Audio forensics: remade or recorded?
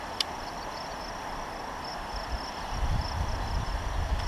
recorded